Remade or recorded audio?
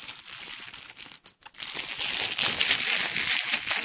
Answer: recorded